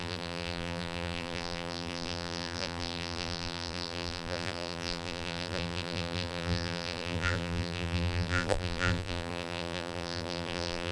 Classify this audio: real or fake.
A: fake